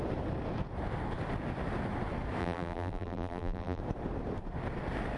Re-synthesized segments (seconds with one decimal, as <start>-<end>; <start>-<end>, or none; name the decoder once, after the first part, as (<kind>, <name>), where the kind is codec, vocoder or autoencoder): 2.4-3.8 (vocoder, BigVGAN v2)